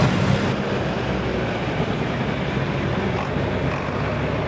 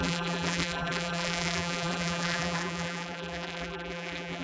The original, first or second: first